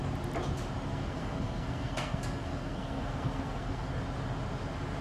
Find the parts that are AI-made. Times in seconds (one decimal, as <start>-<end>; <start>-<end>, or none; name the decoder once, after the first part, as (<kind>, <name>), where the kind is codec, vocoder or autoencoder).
0.9-3.9 (codec, SNAC)